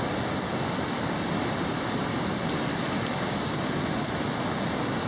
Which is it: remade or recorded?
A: recorded